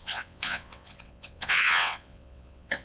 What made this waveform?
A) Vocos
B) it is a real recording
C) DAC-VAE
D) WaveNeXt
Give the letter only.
D